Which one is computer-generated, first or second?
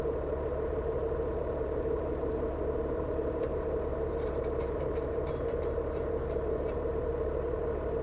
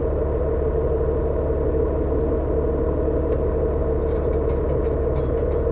first